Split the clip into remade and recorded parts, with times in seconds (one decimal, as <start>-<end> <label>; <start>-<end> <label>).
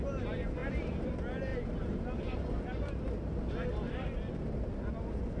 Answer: 0.0-0.6 recorded; 0.6-1.1 remade; 1.1-5.4 recorded